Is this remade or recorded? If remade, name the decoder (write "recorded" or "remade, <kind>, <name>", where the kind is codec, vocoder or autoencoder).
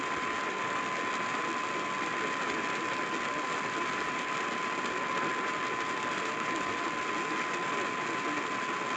recorded